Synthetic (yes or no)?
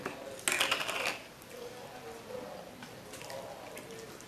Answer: no